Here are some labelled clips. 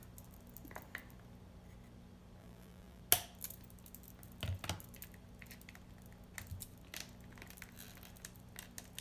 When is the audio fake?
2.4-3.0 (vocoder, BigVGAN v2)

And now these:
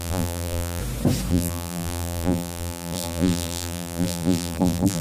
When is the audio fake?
0.0-0.8 (vocoder, BigVGAN v2); 1.3-5.0

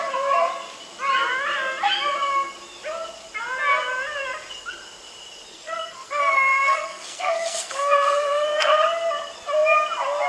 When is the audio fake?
5.5-8.7 (codec, SNAC)